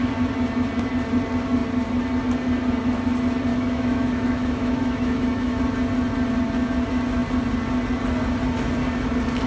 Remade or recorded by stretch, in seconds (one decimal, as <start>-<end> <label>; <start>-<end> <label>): 0.0-3.5 recorded; 3.5-5.6 remade; 5.6-9.5 recorded